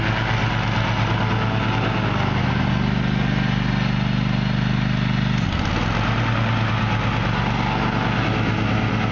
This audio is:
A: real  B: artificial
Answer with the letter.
A